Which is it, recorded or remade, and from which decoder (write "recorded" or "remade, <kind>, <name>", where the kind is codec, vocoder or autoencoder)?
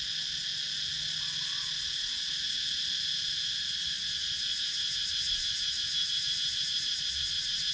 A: recorded